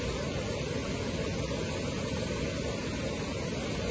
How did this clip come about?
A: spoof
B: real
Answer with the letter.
B